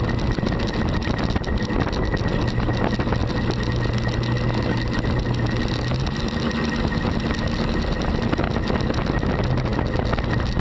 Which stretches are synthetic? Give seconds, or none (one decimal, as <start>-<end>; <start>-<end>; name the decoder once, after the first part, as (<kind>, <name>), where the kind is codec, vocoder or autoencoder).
none